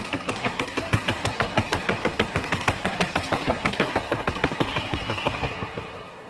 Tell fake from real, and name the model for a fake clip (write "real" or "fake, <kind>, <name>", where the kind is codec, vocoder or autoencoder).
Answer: fake, codec, SNAC